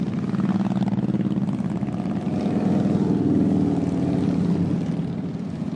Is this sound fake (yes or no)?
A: no